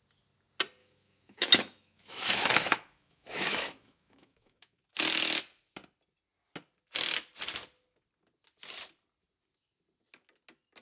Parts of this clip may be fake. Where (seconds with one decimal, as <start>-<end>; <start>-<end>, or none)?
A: 0.8-4.8